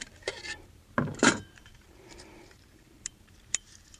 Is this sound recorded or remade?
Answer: remade